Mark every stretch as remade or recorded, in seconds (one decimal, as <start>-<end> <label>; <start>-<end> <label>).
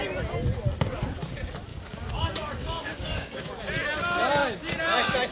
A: 0.0-1.7 recorded; 1.7-3.4 remade; 3.4-5.3 recorded